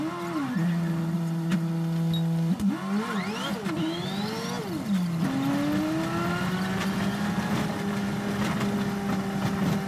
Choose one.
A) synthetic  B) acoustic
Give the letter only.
B